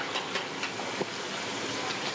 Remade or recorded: recorded